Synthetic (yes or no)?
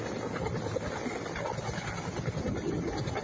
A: no